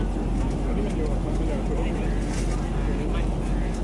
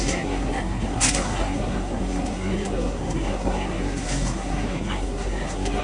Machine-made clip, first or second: second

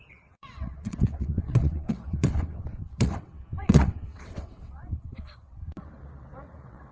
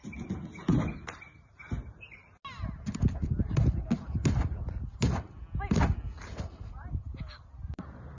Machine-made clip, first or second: first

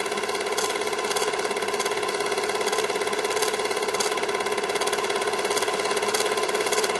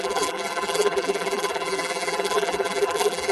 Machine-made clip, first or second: second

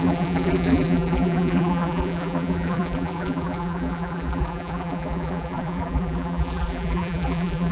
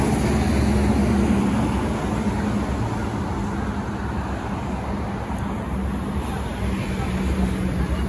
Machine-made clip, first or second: first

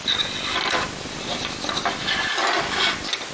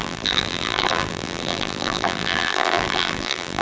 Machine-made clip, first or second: second